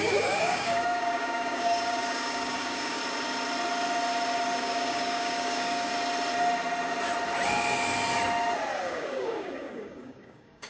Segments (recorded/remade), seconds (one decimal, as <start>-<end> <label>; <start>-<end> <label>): 0.0-3.0 remade; 3.0-4.6 recorded; 4.6-5.9 remade; 5.9-8.8 recorded; 8.8-10.7 remade